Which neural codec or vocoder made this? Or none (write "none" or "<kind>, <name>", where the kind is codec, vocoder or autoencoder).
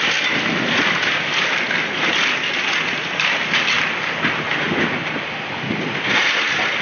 none